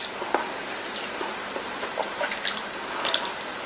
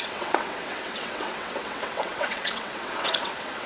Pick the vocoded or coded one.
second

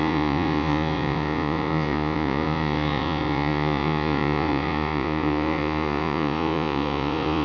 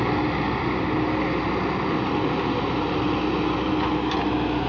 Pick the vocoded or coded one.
first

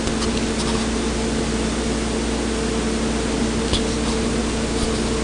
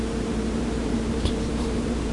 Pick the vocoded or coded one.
second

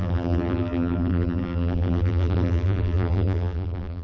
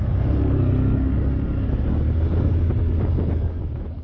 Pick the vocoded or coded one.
first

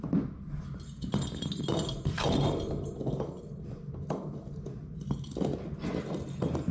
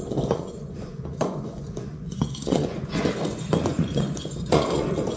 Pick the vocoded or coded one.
second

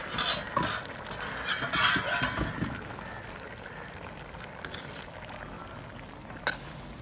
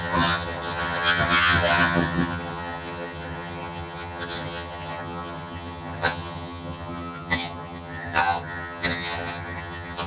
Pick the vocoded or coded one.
second